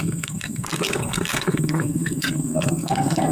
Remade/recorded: remade